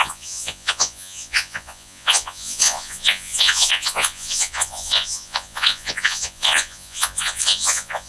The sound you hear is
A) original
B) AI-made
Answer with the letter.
B